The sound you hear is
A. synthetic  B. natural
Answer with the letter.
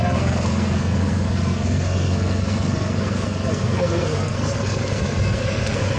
A